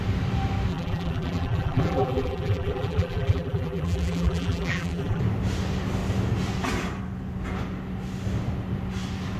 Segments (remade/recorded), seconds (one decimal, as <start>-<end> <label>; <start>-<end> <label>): 0.0-0.7 recorded; 0.7-5.2 remade; 5.2-9.4 recorded